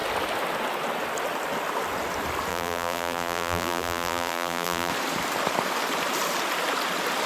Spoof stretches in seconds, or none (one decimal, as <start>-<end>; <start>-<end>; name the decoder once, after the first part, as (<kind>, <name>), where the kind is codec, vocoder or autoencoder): 2.5-4.9 (vocoder, BigVGAN v2)